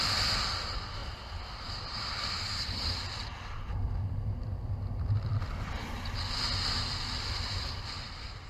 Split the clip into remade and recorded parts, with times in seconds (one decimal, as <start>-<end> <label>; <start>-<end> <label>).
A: 0.0-8.5 recorded

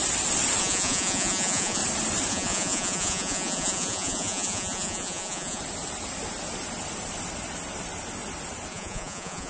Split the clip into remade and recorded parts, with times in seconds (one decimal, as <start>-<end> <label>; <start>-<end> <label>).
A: 0.0-0.6 recorded; 0.6-1.8 remade; 1.8-2.3 recorded; 2.3-5.6 remade; 5.6-8.7 recorded; 8.7-9.5 remade